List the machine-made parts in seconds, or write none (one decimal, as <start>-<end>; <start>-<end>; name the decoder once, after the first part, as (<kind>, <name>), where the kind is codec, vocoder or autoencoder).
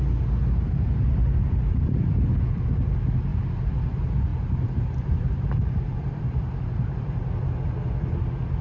0.4-2.0 (vocoder, BigVGAN v2); 4.3-7.5